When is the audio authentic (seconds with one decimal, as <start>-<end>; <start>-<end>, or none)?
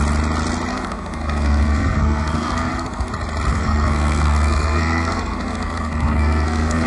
0.0-0.7; 3.1-3.5